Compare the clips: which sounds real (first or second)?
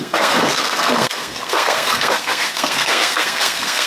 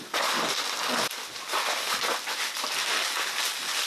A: second